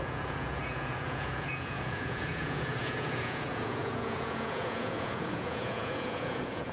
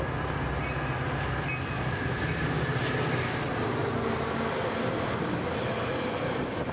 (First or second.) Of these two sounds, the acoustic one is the second